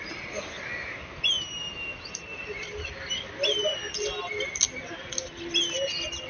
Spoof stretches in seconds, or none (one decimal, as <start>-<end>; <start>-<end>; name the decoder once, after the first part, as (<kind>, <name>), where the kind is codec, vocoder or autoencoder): none